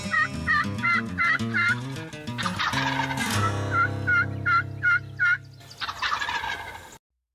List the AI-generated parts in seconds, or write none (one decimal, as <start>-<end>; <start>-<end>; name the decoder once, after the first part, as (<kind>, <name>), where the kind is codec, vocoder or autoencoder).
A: none